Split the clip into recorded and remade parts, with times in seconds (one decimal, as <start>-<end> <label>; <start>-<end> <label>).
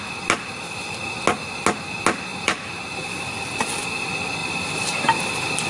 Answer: 0.0-2.3 recorded; 2.3-3.1 remade; 3.1-4.4 recorded; 4.4-5.3 remade; 5.3-5.7 recorded